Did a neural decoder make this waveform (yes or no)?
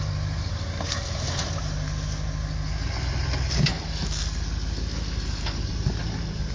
no